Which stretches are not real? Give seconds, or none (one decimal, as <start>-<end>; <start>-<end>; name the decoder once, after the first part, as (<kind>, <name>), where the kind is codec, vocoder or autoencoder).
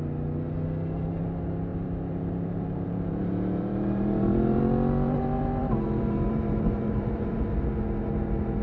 1.7-4.6 (vocoder, BigVGAN v2); 5.6-7.4